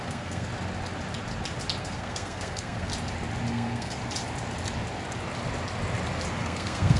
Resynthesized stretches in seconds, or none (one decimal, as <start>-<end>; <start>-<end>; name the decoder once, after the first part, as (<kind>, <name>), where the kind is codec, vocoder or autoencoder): 0.0-0.5 (codec, SNAC); 1.8-2.9; 3.5-4.0; 6.4-7.0